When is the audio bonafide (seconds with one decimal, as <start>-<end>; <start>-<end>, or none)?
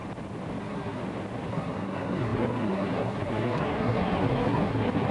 0.0-0.6; 1.0-1.5